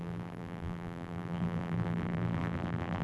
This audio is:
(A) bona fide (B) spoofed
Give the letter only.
B